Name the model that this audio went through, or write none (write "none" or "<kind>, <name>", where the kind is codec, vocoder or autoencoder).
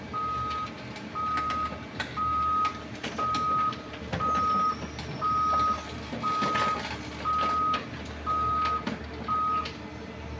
none